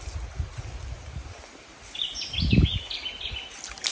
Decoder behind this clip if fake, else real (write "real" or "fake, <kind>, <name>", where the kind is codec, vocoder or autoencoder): real